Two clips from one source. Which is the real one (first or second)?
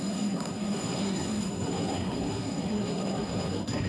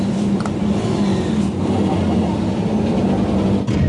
second